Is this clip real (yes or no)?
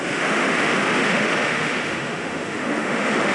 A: no